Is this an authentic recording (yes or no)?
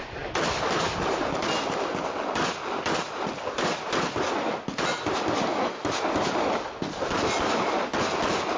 yes